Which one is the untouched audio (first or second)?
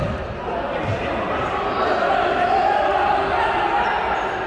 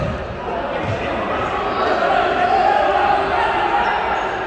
second